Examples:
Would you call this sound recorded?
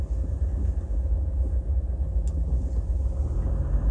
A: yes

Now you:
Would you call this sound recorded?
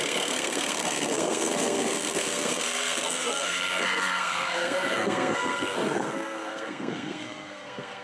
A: no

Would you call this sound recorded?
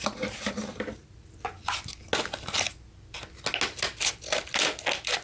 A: yes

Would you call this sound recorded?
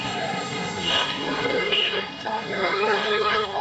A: no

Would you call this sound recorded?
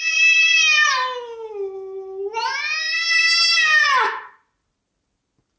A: yes